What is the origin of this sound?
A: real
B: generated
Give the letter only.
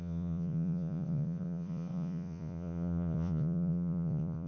B